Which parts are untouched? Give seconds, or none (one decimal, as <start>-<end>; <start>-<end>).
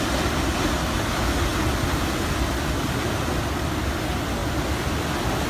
0.0-5.5